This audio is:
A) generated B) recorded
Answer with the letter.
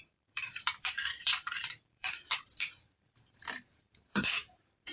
A